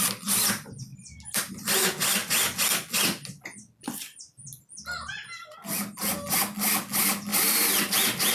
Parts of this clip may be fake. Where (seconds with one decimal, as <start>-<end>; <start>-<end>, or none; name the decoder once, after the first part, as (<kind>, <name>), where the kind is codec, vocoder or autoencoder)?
0.9-1.5 (vocoder, BigVGAN v2); 2.2-2.7; 7.3-8.3